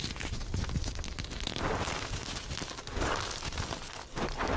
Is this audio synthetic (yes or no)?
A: no